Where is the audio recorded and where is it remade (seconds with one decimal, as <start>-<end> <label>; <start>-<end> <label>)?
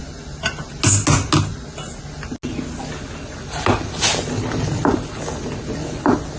0.0-0.7 remade; 0.7-6.4 recorded